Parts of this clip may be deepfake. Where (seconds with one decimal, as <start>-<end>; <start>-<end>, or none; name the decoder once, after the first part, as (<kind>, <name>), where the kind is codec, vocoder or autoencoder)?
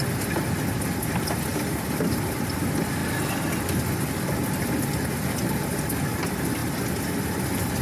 1.5-2.5 (vocoder, BigVGAN v2); 6.6-7.8